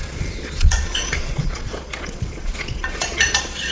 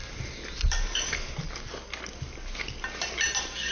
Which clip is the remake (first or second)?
first